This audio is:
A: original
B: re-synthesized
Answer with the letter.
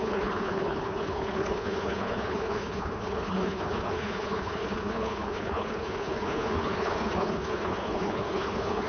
B